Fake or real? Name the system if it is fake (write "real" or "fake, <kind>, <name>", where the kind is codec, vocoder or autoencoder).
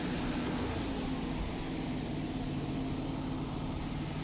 real